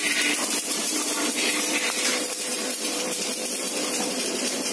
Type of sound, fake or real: fake